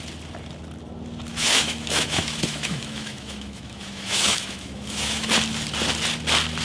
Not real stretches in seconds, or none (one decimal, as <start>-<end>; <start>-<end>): 1.3-5.3

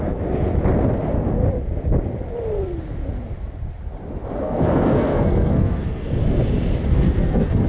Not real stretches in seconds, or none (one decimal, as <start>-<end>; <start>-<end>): 0.0-0.5; 4.4-6.2; 6.9-7.7

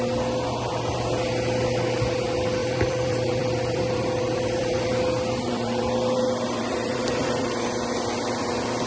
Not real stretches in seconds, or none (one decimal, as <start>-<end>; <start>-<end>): 2.6-7.3

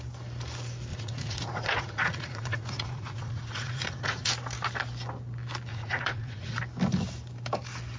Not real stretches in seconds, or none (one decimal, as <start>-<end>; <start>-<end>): 0.9-4.3; 5.7-6.6